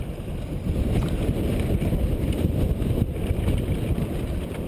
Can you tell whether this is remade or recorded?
remade